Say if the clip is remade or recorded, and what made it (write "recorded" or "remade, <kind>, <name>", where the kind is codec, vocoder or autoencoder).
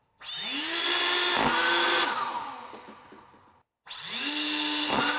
recorded